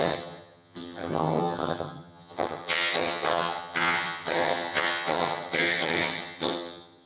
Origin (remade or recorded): remade